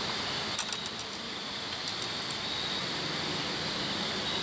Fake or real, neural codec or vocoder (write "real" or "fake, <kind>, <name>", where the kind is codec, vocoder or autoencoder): real